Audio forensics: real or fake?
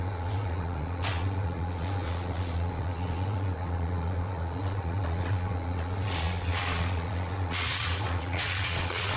fake